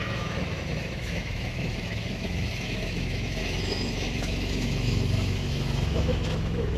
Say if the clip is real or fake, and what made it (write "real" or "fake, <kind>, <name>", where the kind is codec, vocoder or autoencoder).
fake, autoencoder, DAC-VAE